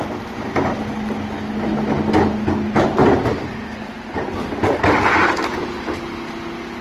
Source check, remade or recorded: recorded